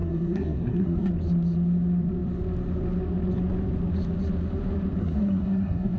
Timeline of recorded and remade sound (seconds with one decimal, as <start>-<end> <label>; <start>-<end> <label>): 0.0-1.1 remade; 1.1-5.0 recorded; 5.0-6.0 remade